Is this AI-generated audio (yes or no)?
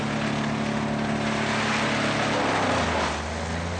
no